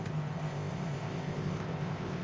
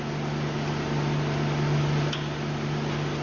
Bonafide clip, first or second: second